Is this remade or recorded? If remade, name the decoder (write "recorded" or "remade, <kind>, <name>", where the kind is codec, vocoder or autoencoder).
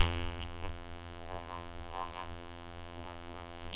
remade, vocoder, BigVGAN v2